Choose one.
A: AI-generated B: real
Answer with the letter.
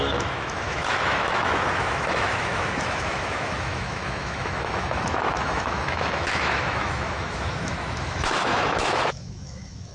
A